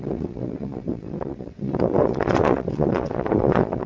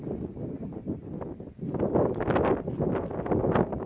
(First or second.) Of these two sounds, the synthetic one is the first